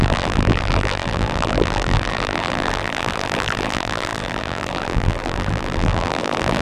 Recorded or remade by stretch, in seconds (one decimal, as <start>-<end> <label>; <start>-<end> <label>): 0.0-6.6 remade